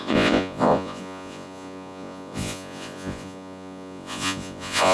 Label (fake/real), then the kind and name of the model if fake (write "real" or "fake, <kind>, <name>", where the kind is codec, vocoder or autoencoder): fake, vocoder, Vocos